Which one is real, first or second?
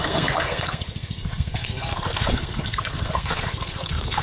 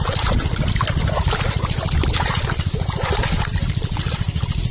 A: second